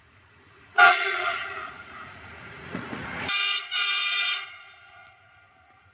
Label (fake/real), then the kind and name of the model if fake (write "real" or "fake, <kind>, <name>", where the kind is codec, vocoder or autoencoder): fake, vocoder, Vocos